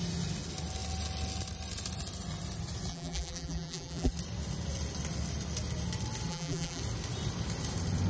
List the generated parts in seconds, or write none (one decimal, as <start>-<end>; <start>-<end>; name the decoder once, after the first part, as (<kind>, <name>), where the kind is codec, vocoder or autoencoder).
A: 2.9-4.1 (vocoder, BigVGAN v2); 6.3-6.8